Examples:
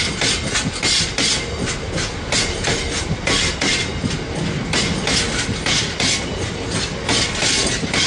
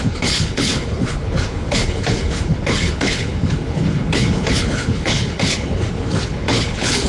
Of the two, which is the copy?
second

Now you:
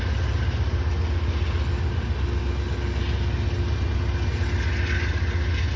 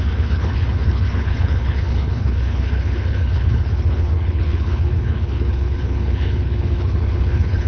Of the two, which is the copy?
second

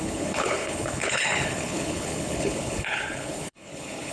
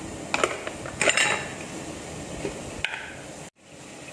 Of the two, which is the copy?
first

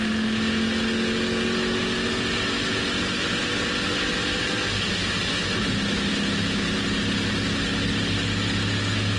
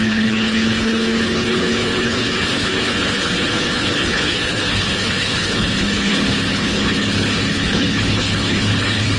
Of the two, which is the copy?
second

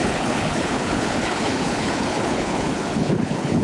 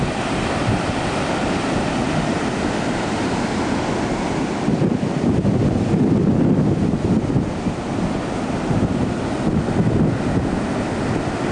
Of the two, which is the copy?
first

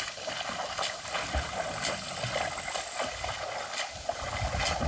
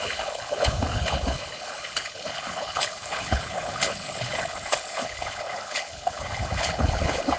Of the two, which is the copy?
second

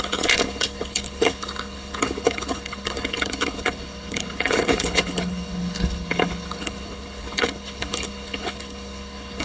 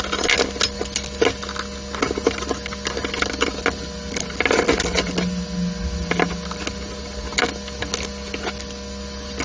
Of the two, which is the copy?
first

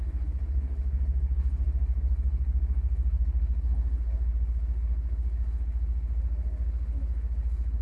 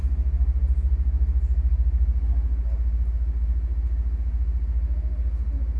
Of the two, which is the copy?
first